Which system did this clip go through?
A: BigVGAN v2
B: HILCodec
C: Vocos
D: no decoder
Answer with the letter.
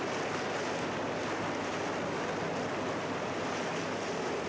D